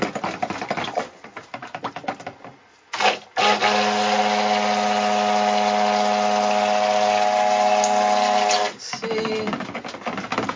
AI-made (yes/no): no